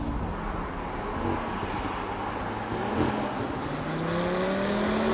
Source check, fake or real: real